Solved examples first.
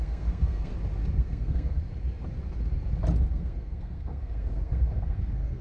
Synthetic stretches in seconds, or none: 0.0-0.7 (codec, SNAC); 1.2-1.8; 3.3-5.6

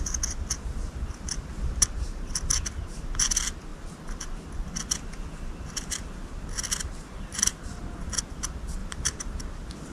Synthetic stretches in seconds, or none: 1.5-2.3 (vocoder, BigVGAN v2); 8.8-9.4